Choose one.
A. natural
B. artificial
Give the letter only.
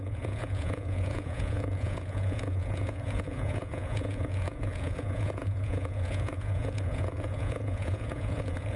B